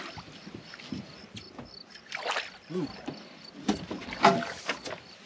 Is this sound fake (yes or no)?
no